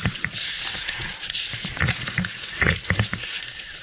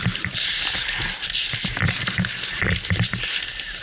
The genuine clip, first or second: second